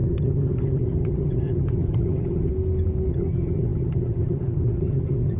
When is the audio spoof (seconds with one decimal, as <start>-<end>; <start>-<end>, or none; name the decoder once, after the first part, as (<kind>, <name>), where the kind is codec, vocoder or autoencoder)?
0.0-2.5 (vocoder, HiFi-GAN); 3.1-5.4